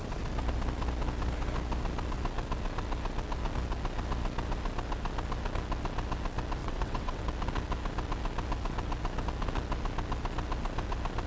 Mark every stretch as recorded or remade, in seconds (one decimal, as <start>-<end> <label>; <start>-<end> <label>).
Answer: 0.0-6.6 recorded; 6.6-7.2 remade; 7.2-11.3 recorded